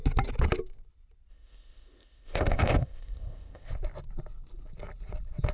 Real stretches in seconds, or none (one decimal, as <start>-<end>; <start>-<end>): 0.0-1.3; 3.7-5.5